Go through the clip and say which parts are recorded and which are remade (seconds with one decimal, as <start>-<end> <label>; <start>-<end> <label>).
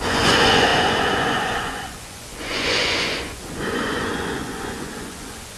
0.0-5.6 remade